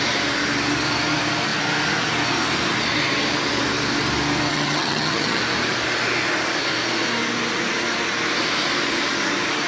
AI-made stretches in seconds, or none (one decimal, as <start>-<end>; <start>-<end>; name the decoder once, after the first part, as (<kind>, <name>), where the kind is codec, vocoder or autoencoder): 4.5-5.4 (vocoder, HiFi-GAN)